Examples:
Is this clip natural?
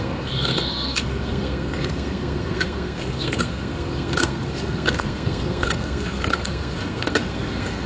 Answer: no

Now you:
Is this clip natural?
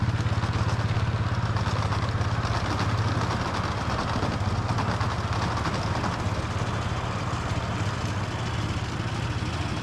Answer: yes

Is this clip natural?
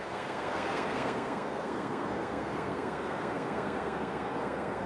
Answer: no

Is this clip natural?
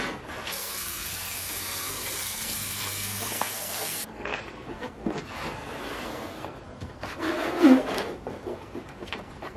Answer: no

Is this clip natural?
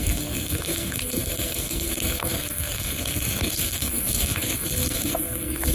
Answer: no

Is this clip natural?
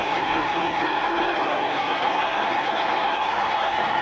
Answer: no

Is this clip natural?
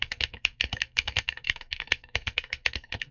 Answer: no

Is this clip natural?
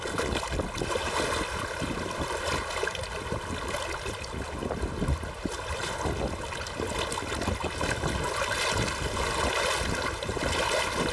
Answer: yes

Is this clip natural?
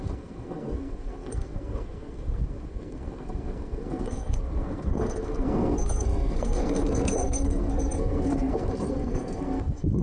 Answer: no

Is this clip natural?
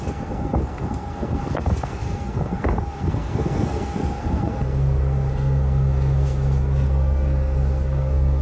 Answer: no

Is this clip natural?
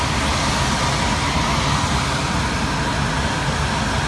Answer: yes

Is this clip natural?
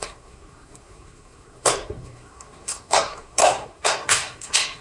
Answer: no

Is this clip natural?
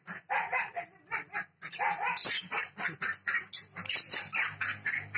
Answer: yes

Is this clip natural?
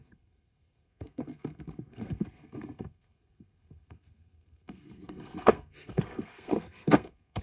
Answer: no